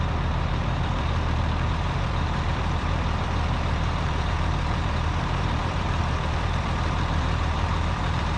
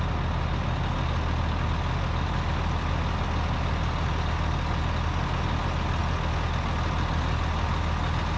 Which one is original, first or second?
second